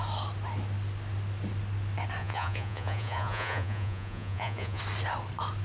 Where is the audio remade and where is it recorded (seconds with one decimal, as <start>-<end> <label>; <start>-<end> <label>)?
0.0-2.2 recorded; 2.2-4.8 remade; 4.8-5.6 recorded